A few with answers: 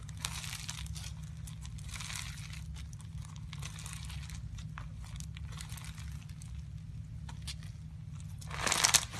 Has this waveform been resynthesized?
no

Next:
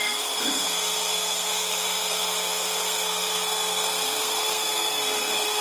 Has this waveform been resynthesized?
yes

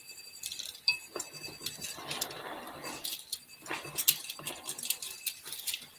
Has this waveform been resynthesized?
no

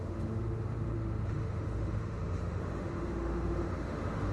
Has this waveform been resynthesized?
yes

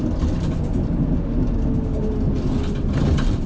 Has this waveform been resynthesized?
no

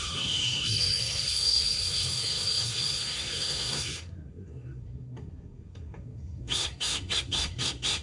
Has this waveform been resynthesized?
yes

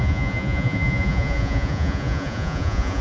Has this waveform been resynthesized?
yes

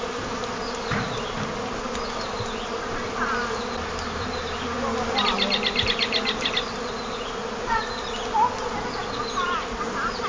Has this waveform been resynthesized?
no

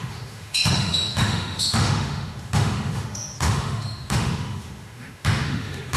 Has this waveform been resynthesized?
yes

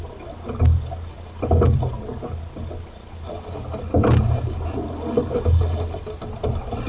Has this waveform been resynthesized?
no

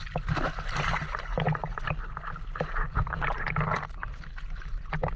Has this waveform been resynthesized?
no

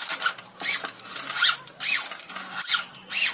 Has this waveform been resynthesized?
no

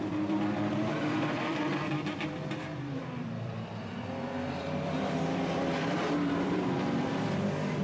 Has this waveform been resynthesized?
yes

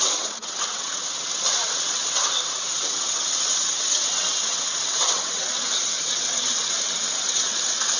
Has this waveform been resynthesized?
yes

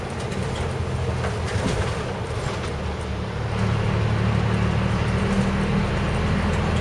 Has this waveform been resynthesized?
no